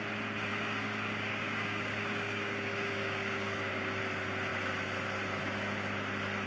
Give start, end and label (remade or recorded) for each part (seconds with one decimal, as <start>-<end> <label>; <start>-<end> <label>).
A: 0.0-0.5 recorded; 0.5-4.0 remade; 4.0-6.5 recorded